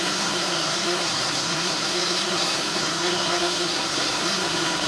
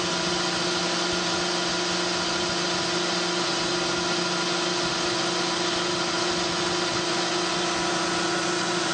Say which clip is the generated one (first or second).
first